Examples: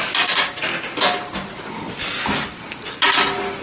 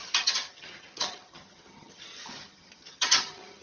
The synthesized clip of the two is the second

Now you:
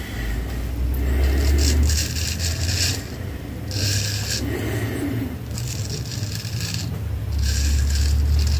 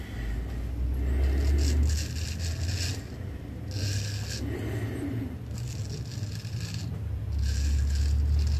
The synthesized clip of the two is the first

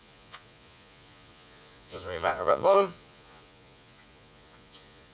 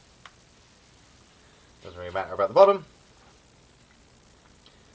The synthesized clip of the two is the first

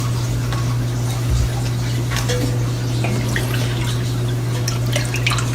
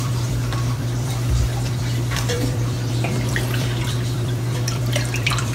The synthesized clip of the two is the second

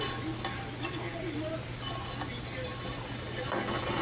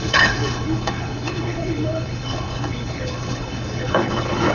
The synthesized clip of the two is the second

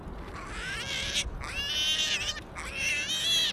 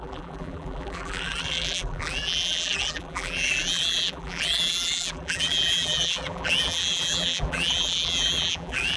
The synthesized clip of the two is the second